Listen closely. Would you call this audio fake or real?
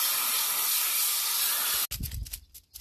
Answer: real